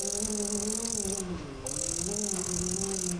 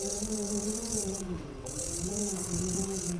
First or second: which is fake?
second